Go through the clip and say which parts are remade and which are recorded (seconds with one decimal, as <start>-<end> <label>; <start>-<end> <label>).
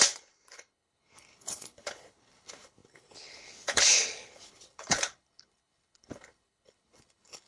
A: 0.0-7.5 remade